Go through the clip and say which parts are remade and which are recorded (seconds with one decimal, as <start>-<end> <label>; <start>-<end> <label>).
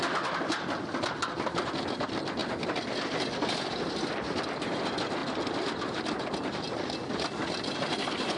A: 0.0-8.4 recorded